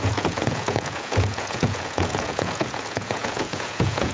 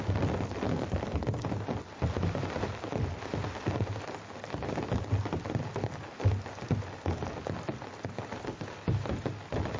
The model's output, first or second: first